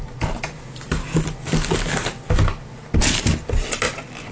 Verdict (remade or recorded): recorded